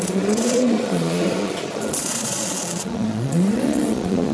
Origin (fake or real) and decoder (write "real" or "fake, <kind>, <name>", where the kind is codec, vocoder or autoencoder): fake, vocoder, Vocos